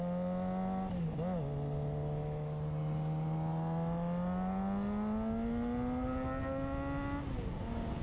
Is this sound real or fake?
real